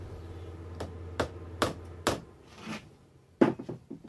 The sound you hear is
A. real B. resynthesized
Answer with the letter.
A